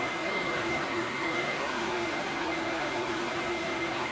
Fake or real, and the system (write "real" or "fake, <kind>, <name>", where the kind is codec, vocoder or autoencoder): fake, codec, SNAC